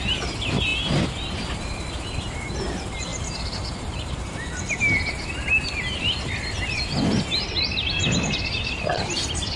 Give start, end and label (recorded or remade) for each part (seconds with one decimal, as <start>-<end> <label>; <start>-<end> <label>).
0.0-3.1 recorded; 3.1-4.8 remade; 4.8-9.6 recorded